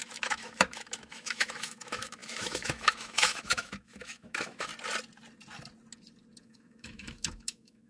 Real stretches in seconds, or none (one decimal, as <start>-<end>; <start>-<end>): 4.7-6.4